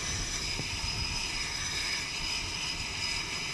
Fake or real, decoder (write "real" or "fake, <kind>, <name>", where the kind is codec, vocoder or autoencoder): real